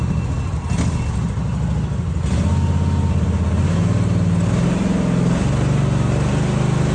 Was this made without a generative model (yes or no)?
yes